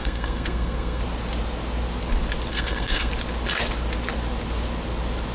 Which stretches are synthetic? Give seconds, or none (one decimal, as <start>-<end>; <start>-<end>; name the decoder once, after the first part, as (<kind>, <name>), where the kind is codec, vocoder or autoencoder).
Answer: 0.0-1.0 (codec, SNAC); 2.5-3.1